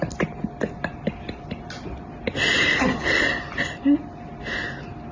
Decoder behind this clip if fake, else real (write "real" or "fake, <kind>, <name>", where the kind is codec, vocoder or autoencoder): real